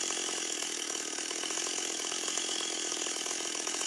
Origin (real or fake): fake